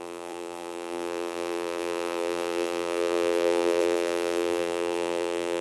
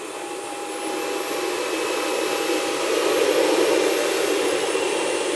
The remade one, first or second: first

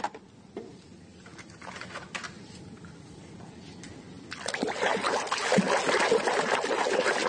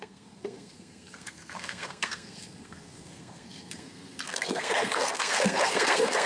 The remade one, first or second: second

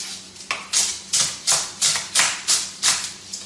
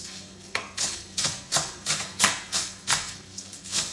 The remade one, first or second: second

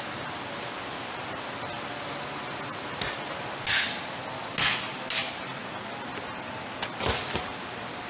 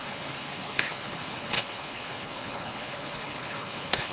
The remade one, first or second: second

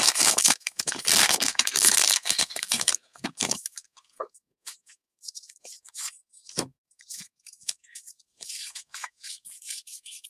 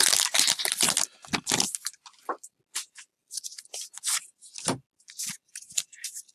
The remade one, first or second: first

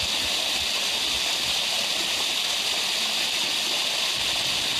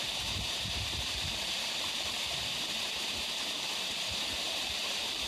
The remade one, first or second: second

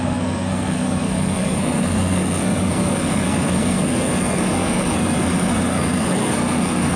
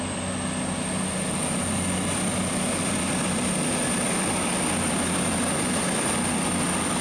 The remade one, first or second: first